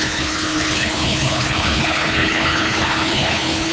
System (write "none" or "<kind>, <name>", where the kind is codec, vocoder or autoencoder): codec, HILCodec